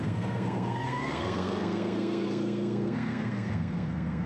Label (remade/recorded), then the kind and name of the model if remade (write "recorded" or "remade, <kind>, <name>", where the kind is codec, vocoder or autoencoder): remade, codec, SNAC